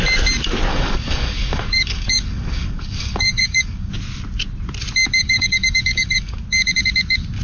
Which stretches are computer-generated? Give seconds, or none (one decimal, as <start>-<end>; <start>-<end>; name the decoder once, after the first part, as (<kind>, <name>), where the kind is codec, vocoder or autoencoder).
0.7-3.9 (codec, DAC); 5.2-6.4